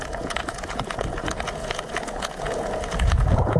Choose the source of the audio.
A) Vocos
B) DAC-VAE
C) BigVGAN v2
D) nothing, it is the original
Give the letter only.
A